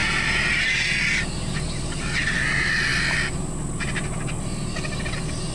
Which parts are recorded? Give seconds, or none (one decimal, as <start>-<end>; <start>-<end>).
0.0-5.5